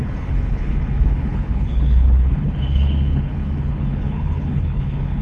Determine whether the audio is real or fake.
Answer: fake